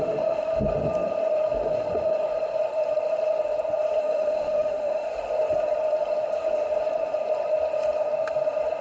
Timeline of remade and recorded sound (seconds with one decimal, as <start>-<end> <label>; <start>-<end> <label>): 0.0-0.5 remade; 0.5-4.0 recorded; 4.0-5.1 remade; 5.1-8.8 recorded

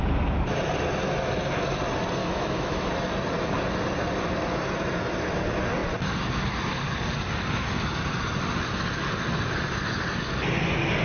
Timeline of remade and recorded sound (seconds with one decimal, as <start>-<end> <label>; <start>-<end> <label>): 0.0-2.2 recorded; 2.2-2.9 remade; 2.9-11.0 recorded